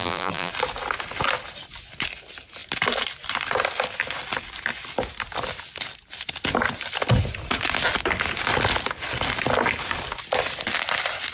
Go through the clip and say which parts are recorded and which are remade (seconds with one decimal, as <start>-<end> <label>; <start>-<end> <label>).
0.0-0.5 remade; 0.5-11.3 recorded